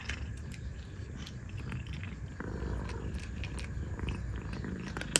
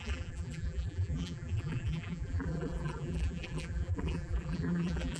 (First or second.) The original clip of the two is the first